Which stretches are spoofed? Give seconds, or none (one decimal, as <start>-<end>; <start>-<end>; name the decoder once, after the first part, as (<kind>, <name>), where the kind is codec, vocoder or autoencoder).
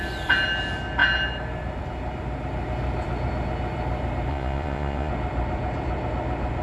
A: 4.3-5.1 (vocoder, Vocos)